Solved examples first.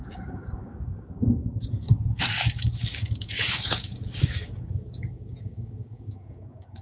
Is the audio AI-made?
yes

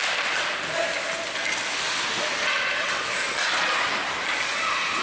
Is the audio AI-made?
no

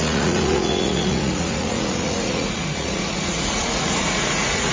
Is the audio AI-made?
yes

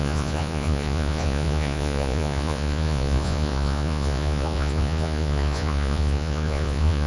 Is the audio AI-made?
yes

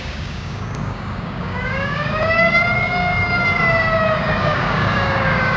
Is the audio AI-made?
yes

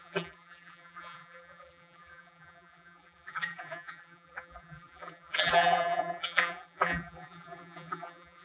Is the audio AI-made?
yes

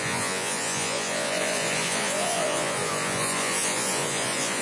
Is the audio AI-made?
yes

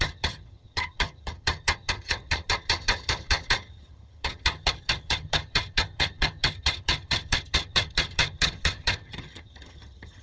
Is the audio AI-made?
yes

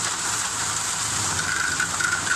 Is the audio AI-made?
yes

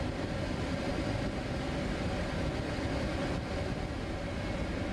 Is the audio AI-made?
no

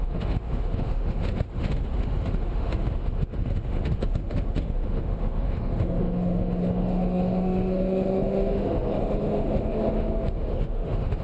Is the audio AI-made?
yes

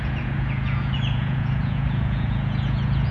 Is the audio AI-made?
yes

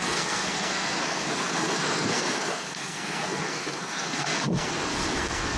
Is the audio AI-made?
yes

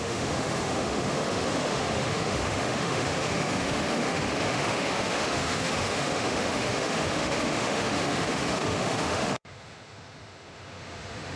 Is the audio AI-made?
yes